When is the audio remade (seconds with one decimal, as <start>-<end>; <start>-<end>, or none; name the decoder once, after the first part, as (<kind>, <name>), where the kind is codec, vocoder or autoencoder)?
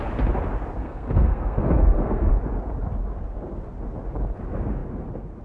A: 0.8-2.3 (codec, SNAC)